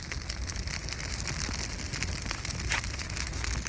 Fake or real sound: real